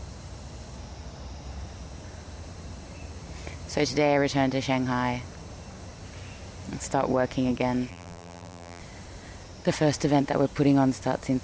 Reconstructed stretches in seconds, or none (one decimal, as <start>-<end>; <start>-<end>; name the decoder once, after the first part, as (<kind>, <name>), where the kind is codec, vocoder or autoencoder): 7.9-8.8 (vocoder, BigVGAN v2)